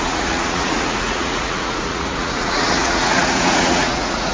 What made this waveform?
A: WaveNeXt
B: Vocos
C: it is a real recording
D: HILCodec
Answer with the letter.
B